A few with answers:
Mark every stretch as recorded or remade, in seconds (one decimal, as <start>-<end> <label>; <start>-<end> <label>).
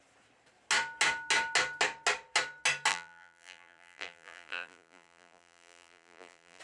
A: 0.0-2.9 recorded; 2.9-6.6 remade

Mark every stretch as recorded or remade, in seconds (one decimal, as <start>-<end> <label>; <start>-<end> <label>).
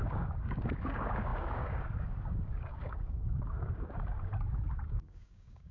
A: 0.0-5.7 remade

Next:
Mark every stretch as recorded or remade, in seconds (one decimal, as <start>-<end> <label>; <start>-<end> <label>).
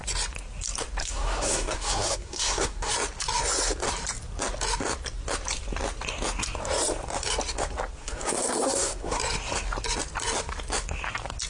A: 0.0-1.0 recorded; 1.0-2.9 remade; 2.9-8.0 recorded; 8.0-9.2 remade; 9.2-11.5 recorded